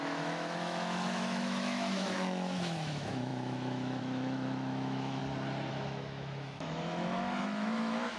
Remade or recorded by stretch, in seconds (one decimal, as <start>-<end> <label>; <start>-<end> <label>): 0.0-5.2 remade; 5.2-5.7 recorded; 5.7-8.2 remade